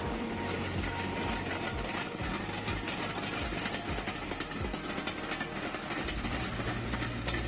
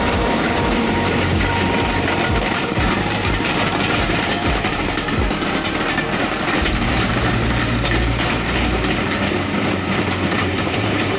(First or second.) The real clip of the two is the first